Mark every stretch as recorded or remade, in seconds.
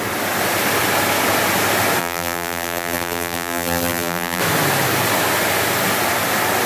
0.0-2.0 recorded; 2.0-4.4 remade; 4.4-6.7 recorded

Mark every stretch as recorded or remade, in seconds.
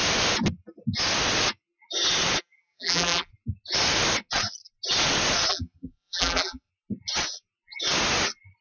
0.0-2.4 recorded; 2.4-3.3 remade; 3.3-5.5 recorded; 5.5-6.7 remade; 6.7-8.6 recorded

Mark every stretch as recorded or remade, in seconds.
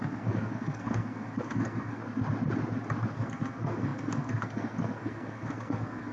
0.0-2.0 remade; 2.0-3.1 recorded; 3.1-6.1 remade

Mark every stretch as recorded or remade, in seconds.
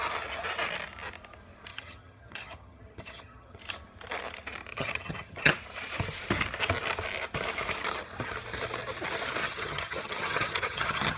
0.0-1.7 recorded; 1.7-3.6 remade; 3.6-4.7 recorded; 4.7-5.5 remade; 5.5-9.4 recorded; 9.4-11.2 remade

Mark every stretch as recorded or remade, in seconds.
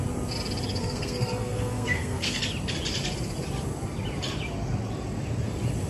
0.0-0.8 recorded; 0.8-2.4 remade; 2.4-5.9 recorded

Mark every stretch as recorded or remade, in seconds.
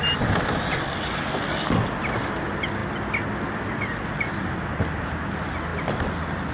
0.0-6.5 recorded